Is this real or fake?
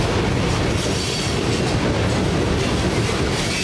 real